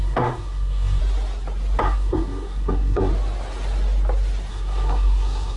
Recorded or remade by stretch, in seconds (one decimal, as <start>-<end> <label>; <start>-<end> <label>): 0.0-1.0 remade; 1.0-1.8 recorded; 1.8-3.1 remade; 3.1-4.5 recorded; 4.5-5.6 remade